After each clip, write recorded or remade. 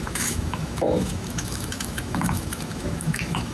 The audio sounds remade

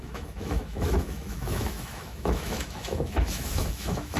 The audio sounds remade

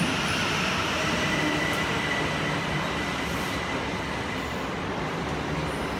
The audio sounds recorded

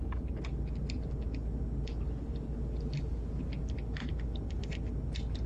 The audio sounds recorded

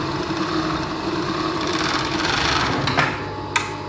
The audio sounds recorded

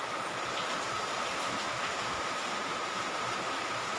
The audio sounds recorded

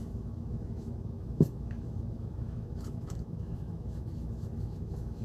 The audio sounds remade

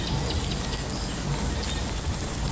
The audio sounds recorded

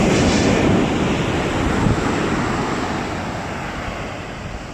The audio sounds recorded